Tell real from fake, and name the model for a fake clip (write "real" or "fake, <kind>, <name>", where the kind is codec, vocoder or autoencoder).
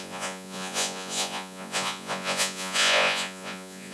fake, vocoder, Vocos